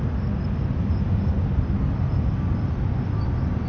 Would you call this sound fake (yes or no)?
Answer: no